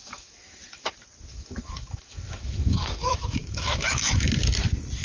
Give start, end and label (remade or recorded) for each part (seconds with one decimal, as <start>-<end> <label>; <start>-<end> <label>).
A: 0.0-0.9 remade; 0.9-1.3 recorded; 1.3-4.3 remade; 4.3-5.0 recorded